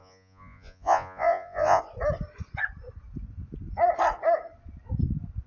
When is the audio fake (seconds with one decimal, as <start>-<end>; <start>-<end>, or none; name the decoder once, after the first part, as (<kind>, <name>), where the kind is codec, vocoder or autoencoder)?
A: 0.0-1.8 (vocoder, Vocos)